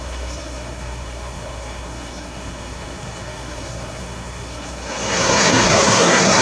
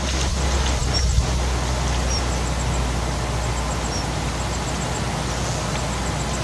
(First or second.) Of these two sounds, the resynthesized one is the first